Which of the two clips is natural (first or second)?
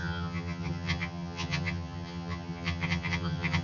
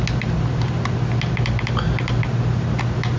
second